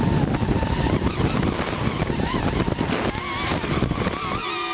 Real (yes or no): yes